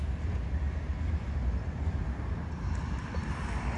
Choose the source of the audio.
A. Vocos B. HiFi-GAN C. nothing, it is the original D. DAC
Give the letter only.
C